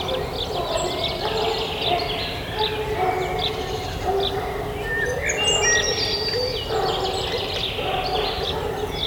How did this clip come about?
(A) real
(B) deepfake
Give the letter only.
A